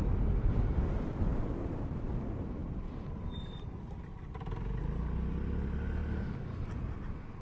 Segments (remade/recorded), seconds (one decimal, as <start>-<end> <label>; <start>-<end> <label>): 0.0-1.3 recorded; 1.3-2.1 remade; 2.1-7.4 recorded